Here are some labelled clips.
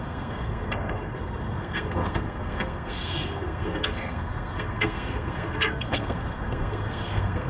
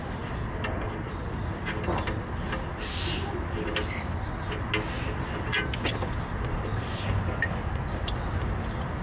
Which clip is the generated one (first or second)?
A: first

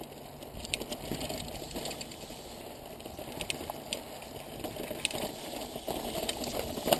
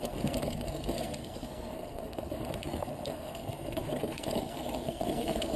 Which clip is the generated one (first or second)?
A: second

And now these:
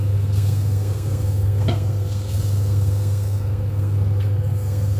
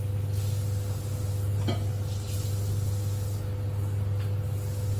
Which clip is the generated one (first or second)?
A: first